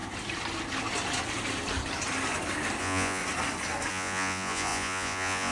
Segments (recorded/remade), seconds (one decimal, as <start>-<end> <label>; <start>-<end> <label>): 0.0-2.8 recorded; 2.8-3.2 remade; 3.2-3.9 recorded; 3.9-5.5 remade